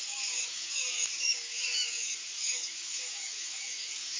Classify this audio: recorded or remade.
remade